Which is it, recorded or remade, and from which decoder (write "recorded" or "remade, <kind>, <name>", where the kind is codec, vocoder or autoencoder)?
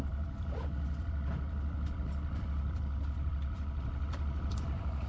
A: remade, vocoder, BigVGAN v2